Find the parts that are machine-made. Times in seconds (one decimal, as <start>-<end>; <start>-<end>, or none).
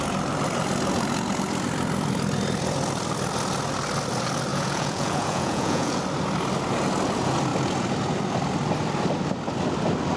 4.5-6.0